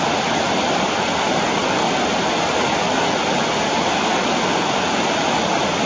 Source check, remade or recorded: recorded